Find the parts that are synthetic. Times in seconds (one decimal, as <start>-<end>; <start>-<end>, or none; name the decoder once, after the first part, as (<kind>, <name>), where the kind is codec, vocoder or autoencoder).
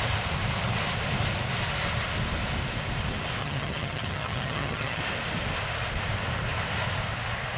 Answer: 3.4-5.0 (vocoder, HiFi-GAN)